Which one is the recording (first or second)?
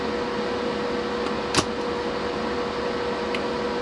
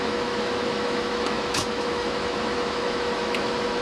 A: first